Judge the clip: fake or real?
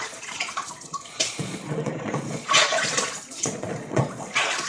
fake